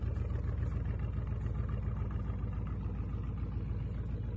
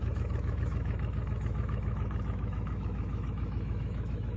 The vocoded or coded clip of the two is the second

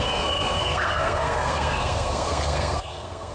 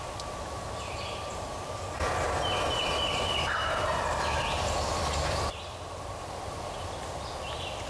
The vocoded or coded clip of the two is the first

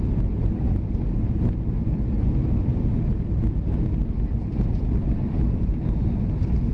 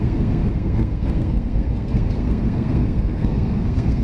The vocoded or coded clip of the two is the second